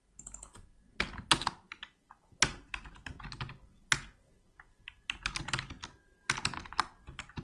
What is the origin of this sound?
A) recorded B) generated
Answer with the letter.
A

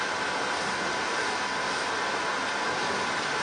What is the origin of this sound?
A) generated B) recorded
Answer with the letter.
B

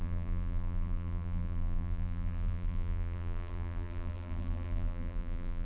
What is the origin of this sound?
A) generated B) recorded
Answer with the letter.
A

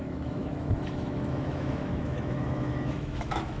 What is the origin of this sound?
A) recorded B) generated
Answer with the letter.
B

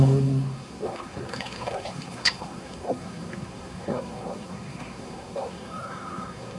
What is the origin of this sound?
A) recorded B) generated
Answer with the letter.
B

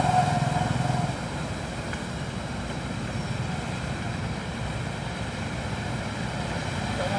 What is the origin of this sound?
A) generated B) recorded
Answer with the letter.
B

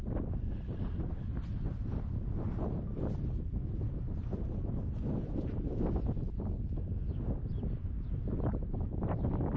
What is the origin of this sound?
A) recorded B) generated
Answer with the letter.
A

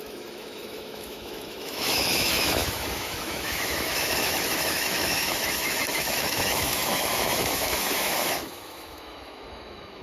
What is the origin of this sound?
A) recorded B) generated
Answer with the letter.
B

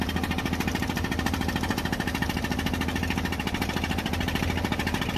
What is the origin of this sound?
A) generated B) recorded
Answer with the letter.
A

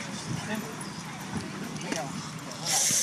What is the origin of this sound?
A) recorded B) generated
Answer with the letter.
A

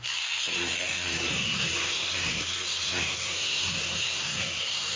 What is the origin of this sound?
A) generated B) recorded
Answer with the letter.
A